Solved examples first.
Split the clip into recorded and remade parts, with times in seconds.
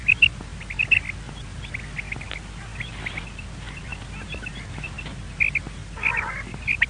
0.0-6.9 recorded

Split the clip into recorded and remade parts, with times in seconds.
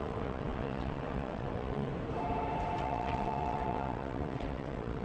0.0-1.9 remade; 1.9-2.8 recorded; 2.8-5.0 remade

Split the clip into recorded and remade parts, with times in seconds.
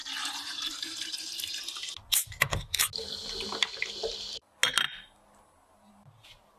0.0-6.6 recorded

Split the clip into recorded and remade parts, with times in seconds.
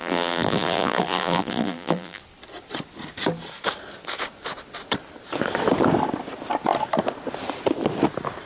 0.0-2.2 remade; 2.2-8.5 recorded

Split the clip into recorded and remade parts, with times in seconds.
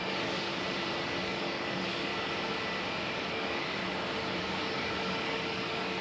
0.0-0.5 remade; 0.5-1.0 recorded; 1.0-2.1 remade; 2.1-3.3 recorded; 3.3-3.8 remade; 3.8-4.4 recorded; 4.4-6.0 remade